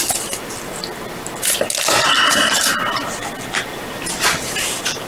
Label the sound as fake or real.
real